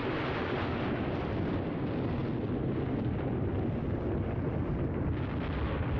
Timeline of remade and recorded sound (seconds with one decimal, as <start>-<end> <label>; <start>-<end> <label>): 0.0-6.0 recorded